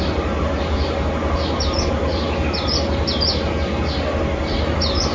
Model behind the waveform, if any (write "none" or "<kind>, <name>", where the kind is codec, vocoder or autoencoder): none